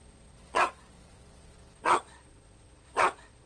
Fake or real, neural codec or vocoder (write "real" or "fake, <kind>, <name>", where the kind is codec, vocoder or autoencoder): fake, vocoder, Vocos